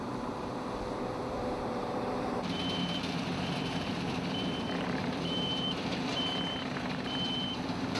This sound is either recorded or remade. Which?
remade